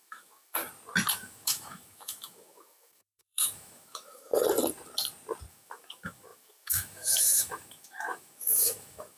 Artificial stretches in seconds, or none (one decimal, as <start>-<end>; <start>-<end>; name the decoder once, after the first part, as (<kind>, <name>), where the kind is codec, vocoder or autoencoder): 0.0-0.6 (autoencoder, DAC-VAE); 1.1-4.3; 5.5-9.2